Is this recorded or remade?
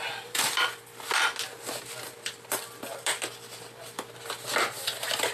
recorded